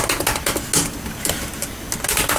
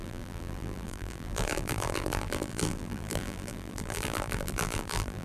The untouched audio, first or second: first